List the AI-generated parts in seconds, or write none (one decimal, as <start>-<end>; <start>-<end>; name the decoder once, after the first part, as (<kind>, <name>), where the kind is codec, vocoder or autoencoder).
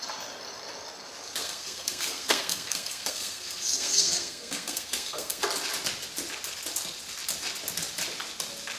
1.4-5.4 (codec, SNAC)